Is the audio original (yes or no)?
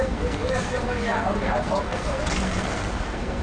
no